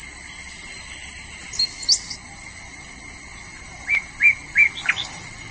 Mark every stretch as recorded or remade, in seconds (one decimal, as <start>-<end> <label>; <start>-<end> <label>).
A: 0.0-5.5 recorded